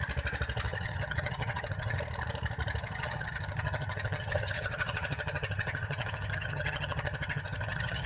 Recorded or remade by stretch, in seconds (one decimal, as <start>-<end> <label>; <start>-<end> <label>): 0.0-0.7 recorded; 0.7-2.0 remade; 2.0-2.8 recorded; 2.8-8.1 remade